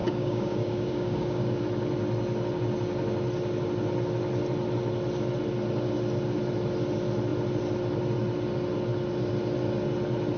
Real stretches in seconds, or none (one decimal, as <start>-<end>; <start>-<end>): 1.6-10.4